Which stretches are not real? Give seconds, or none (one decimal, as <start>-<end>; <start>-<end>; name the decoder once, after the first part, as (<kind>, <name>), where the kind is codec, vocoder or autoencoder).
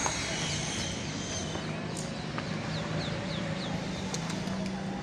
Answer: none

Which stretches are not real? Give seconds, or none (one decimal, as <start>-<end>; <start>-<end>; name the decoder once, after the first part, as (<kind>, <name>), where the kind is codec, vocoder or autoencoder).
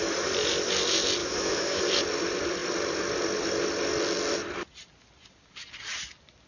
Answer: 1.2-1.8 (autoencoder, DAC-VAE)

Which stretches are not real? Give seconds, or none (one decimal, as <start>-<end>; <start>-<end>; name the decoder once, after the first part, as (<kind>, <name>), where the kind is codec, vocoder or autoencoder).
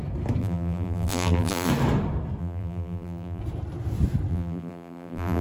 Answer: 0.4-1.7 (vocoder, BigVGAN v2); 2.4-3.4; 4.3-5.4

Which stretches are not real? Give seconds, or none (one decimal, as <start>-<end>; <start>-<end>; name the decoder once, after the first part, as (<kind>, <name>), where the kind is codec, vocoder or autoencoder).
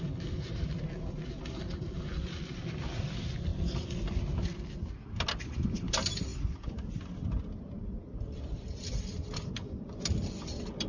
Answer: none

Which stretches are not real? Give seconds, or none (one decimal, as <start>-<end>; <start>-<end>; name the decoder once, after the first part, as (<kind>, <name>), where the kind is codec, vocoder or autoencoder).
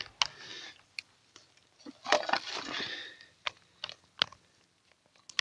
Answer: none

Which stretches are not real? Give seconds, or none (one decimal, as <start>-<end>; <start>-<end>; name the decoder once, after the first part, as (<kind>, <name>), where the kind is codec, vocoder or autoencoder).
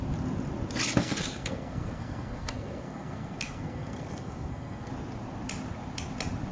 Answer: 1.0-4.9 (codec, SNAC)